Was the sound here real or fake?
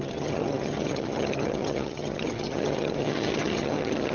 fake